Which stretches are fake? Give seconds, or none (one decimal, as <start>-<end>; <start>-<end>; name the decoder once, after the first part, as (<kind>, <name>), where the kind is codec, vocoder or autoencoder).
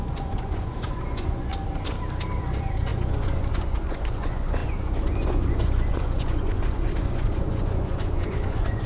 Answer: 0.0-1.5 (vocoder, Vocos); 2.4-8.9